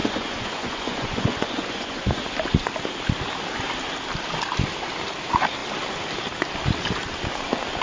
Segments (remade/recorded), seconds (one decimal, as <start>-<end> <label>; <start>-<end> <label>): 0.0-2.2 remade; 2.2-7.8 recorded